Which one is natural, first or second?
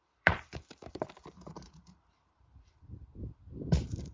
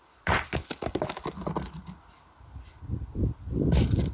second